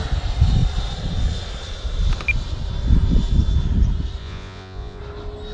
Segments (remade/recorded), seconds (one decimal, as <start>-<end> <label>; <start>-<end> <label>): 0.0-4.2 recorded; 4.2-5.0 remade; 5.0-5.5 recorded

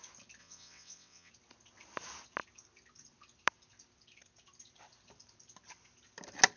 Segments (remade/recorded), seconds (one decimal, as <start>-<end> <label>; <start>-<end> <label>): 0.0-0.4 recorded; 0.4-1.3 remade; 1.3-6.6 recorded

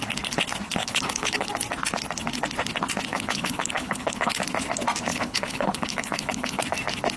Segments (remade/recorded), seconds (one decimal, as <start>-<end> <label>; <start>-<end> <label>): 0.0-0.8 recorded; 0.8-1.5 remade; 1.5-3.1 recorded; 3.1-4.4 remade; 4.4-5.1 recorded; 5.1-6.6 remade; 6.6-7.2 recorded